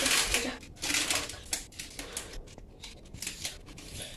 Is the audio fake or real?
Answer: real